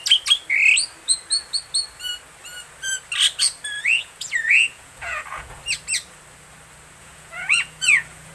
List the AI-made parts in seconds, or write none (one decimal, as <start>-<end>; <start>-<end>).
3.8-5.6; 7.0-8.3